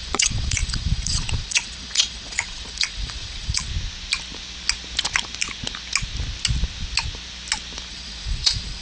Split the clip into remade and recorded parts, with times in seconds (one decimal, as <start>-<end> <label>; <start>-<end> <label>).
0.0-3.7 remade; 3.7-7.9 recorded; 7.9-8.8 remade